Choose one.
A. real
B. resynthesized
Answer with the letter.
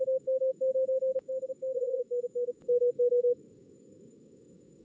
B